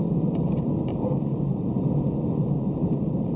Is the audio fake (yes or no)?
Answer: yes